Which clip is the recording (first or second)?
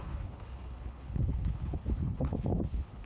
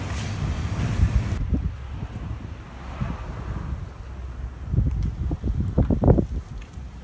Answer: second